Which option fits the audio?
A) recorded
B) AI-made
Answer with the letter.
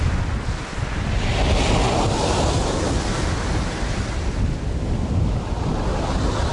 A